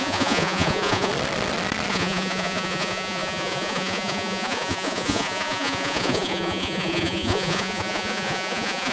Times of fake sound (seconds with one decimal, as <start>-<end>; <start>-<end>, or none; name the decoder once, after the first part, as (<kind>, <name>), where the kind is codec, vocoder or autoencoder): 0.0-1.1 (vocoder, Vocos); 1.9-8.9